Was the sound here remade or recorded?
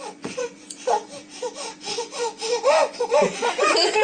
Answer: remade